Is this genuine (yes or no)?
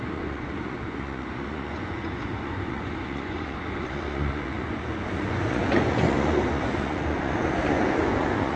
no